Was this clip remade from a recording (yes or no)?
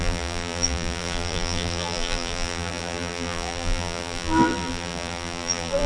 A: yes